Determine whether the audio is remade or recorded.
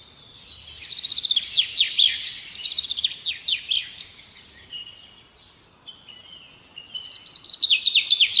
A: recorded